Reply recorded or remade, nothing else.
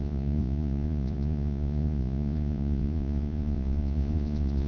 remade